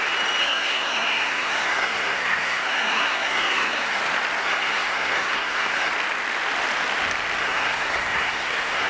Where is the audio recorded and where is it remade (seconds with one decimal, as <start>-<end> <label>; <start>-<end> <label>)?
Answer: 0.0-0.4 recorded; 0.4-4.0 remade; 4.0-4.4 recorded; 4.4-5.9 remade; 5.9-7.4 recorded; 7.4-8.9 remade